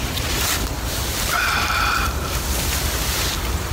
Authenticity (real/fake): fake